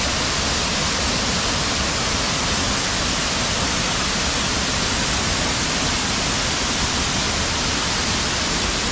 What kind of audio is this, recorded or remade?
recorded